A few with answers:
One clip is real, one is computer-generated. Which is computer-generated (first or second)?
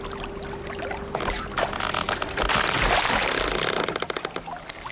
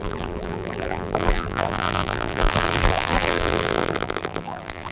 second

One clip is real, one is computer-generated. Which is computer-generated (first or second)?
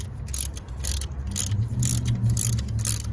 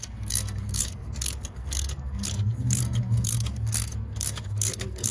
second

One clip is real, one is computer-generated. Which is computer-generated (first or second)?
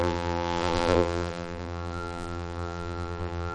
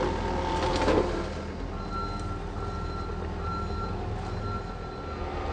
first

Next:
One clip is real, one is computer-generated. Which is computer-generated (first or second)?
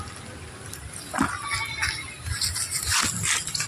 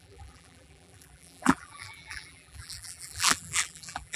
second